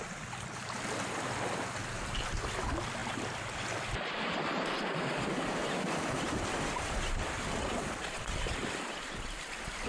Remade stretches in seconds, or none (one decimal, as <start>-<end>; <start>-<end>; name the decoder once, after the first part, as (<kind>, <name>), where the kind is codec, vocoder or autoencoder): 3.0-8.2 (vocoder, BigVGAN v2); 8.6-9.9

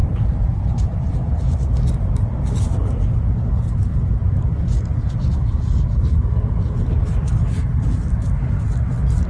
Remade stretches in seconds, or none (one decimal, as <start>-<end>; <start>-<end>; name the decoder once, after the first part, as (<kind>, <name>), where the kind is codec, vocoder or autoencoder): 0.0-1.1 (vocoder, BigVGAN v2)

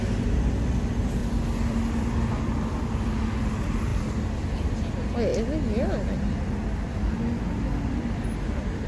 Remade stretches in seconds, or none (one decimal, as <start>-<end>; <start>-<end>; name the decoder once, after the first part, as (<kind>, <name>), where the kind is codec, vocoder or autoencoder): 3.9-4.7 (vocoder, BigVGAN v2)

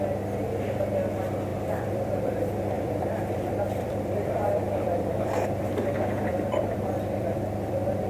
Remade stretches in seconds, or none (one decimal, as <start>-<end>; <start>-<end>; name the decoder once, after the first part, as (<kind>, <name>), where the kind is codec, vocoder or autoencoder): 1.5-5.7 (vocoder, BigVGAN v2); 6.3-8.1

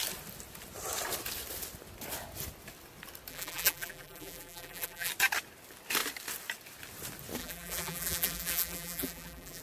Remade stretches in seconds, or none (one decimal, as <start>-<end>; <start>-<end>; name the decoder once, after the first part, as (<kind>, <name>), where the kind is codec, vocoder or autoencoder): 3.3-5.1 (vocoder, BigVGAN v2); 7.4-9.6

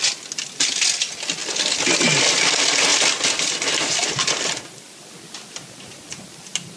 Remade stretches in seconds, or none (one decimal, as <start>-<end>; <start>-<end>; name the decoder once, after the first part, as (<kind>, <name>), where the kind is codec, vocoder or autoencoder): 1.4-2.0 (vocoder, BigVGAN v2)